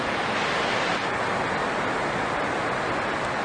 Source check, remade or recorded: recorded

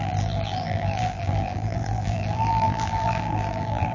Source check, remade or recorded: remade